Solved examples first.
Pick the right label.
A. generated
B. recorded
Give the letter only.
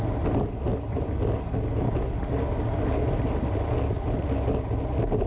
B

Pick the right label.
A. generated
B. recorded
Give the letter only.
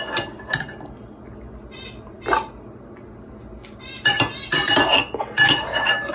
B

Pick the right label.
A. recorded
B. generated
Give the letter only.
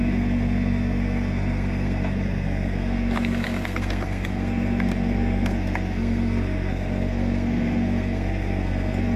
B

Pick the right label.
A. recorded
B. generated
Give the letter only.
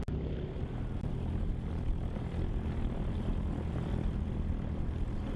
A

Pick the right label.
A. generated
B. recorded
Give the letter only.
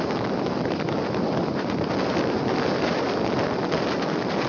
B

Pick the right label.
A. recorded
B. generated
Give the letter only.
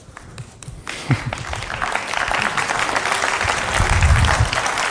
A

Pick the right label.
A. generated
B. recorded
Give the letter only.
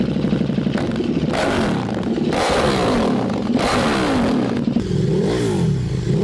B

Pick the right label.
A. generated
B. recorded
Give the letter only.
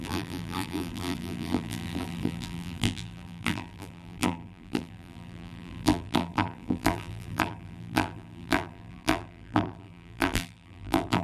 A